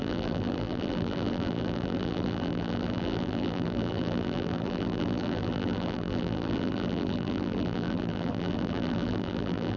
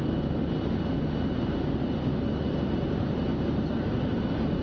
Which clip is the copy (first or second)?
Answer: first